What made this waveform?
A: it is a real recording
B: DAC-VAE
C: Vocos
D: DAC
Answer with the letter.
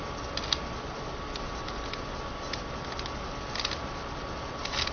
A